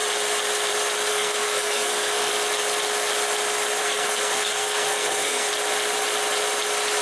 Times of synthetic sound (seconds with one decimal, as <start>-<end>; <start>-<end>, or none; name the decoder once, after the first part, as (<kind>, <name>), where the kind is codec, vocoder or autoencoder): 1.1-2.3 (codec, SNAC); 3.8-5.5

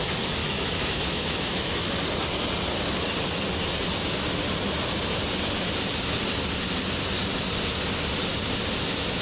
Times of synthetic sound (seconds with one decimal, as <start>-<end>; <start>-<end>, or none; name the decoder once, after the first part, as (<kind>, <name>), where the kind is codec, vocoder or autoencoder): 0.4-1.7 (autoencoder, DAC-VAE)